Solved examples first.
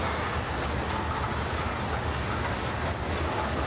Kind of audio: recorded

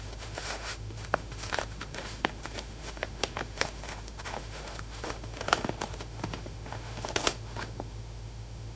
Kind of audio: remade